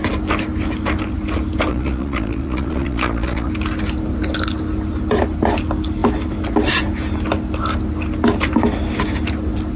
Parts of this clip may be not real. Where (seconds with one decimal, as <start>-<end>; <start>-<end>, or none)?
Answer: 1.7-3.5